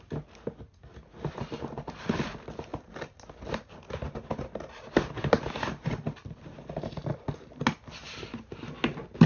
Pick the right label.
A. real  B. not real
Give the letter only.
A